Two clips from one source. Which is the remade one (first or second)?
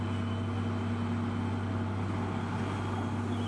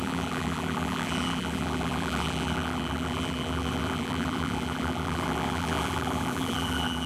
second